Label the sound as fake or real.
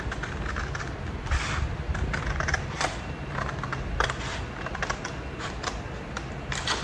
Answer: real